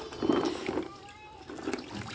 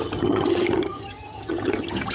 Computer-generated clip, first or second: second